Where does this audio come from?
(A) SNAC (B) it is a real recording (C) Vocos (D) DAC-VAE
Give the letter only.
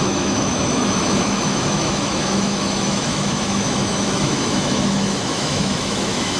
D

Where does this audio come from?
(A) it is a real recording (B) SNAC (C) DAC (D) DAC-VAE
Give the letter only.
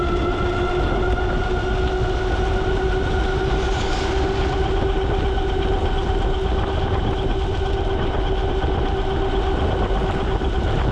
A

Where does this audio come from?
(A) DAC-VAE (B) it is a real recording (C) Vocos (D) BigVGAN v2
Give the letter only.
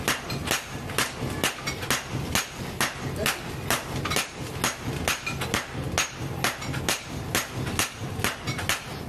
B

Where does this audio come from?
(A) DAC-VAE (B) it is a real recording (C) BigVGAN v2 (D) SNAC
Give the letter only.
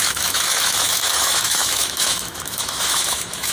A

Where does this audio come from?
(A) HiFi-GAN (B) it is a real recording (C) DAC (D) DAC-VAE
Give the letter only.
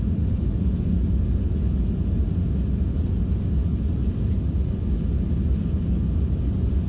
B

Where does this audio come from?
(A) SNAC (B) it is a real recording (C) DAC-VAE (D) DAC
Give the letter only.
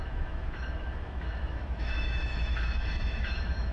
C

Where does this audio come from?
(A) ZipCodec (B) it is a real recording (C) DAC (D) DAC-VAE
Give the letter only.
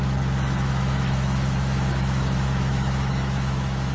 D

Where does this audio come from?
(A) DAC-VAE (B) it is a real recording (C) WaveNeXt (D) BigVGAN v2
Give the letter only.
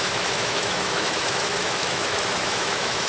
A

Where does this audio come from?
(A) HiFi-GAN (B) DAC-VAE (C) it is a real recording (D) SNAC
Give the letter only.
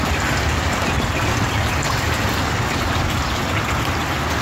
C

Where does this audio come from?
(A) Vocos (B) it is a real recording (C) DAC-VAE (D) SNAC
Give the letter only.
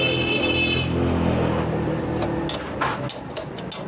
B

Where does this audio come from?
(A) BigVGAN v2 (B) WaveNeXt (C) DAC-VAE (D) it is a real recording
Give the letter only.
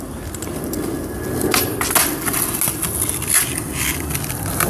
D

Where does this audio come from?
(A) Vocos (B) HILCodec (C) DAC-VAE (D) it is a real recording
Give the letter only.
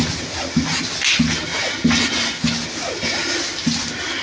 D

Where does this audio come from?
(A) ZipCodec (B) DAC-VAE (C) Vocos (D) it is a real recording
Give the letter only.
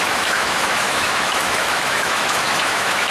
B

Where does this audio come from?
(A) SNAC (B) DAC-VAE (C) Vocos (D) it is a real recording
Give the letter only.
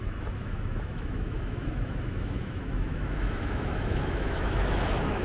B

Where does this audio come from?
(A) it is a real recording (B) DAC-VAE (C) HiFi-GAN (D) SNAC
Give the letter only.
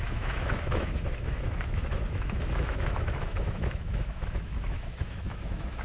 B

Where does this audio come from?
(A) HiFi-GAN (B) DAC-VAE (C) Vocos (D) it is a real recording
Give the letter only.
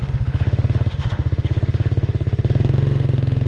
B